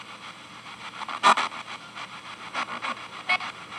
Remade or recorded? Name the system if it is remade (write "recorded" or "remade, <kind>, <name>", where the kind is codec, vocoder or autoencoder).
recorded